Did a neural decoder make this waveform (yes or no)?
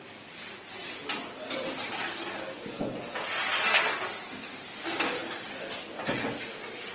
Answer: no